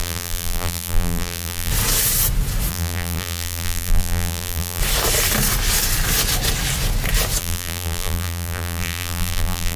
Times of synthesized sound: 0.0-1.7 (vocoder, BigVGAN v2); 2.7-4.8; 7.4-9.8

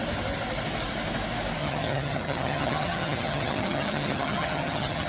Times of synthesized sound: 1.6-5.1 (vocoder, HiFi-GAN)

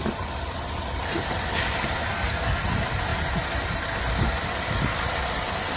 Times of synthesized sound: 2.1-2.6 (codec, SNAC)

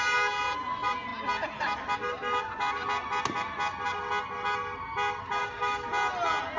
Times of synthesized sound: 5.4-5.9 (codec, DAC)